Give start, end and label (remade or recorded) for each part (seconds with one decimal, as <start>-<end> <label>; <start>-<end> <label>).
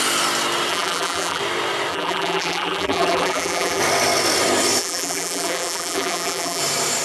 0.0-0.7 recorded; 0.7-1.4 remade; 1.4-1.9 recorded; 1.9-3.8 remade; 3.8-4.8 recorded; 4.8-6.6 remade; 6.6-7.0 recorded